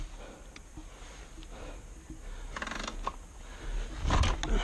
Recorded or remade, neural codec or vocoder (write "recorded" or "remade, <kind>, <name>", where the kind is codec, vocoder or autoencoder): recorded